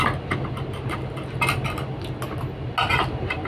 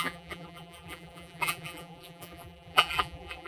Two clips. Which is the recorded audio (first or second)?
first